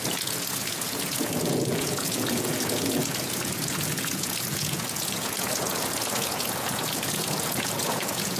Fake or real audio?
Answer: fake